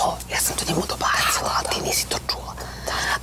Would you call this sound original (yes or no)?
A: no